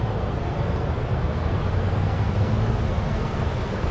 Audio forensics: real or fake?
fake